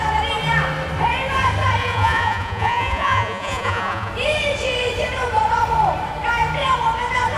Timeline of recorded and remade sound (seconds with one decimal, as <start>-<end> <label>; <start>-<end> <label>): 0.0-1.8 recorded; 1.8-4.1 remade; 4.1-7.4 recorded